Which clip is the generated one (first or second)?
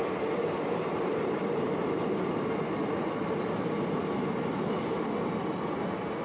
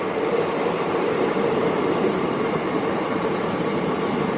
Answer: second